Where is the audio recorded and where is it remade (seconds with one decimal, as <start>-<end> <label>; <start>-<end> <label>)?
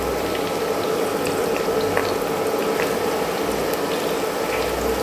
0.0-5.0 recorded